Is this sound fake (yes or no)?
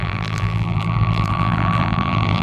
yes